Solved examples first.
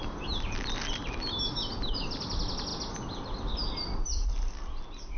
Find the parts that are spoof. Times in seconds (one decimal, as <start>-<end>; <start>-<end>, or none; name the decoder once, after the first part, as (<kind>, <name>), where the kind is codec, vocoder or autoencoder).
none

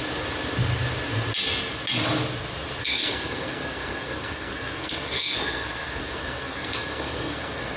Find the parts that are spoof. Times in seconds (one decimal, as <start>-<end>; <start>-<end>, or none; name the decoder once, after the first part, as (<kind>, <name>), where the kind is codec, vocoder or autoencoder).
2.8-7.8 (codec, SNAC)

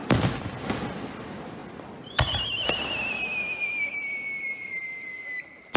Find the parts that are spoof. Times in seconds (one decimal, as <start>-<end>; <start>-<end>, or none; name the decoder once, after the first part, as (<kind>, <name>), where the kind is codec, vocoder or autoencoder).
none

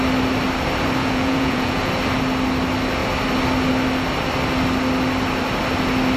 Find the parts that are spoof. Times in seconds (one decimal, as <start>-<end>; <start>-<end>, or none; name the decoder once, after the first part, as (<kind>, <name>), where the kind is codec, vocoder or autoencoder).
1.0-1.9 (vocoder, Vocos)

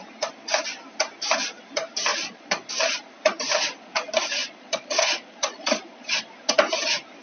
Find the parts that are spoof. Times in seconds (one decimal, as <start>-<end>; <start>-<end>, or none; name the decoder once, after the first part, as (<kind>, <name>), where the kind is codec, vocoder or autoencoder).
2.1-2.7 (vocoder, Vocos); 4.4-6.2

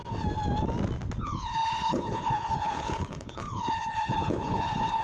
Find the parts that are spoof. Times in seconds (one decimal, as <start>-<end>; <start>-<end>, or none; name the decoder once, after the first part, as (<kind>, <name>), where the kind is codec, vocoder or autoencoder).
1.2-5.0 (codec, HILCodec)